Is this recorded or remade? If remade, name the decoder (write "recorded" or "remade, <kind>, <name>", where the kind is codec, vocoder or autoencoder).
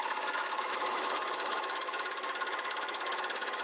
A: remade, autoencoder, DAC-VAE